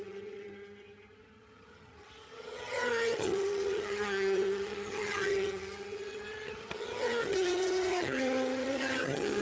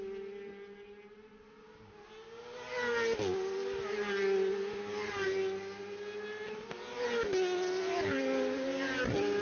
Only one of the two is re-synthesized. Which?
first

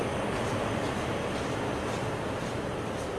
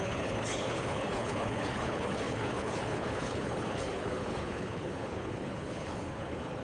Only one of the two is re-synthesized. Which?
second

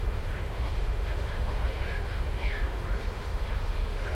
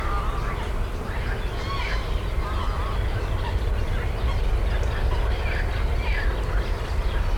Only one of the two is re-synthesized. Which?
first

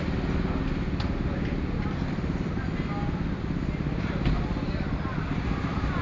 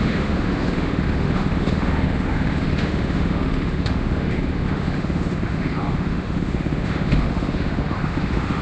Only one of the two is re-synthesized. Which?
second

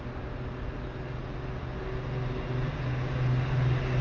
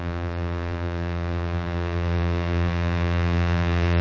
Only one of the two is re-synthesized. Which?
second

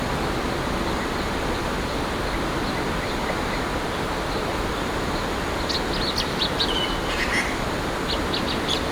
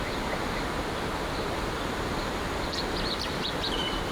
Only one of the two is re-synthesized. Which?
second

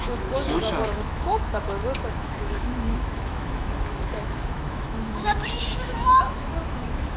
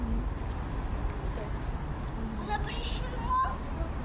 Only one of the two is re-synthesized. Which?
first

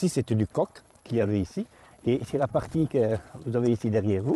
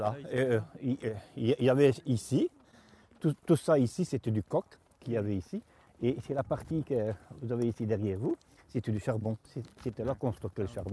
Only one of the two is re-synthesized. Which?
first